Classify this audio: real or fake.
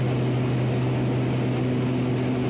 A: real